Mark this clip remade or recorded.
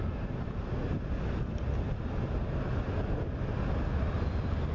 recorded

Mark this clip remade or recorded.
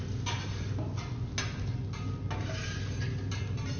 recorded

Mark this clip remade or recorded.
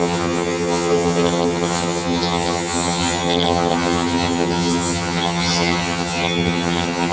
remade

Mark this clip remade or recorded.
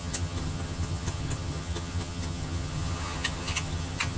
remade